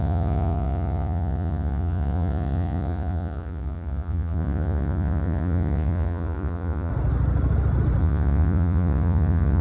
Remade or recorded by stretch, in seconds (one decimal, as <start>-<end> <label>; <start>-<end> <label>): 0.0-6.9 remade; 6.9-8.0 recorded; 8.0-9.6 remade